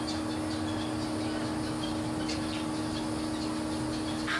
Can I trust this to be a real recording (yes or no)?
yes